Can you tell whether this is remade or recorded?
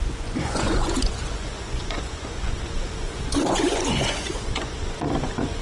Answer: remade